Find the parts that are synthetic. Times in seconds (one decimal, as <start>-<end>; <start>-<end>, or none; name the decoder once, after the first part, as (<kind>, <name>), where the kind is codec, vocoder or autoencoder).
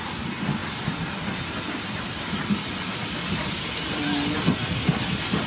none